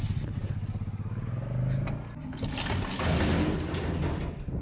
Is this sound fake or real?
real